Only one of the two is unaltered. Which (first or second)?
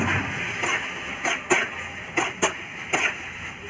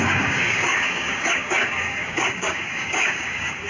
first